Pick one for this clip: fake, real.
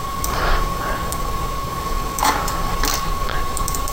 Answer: fake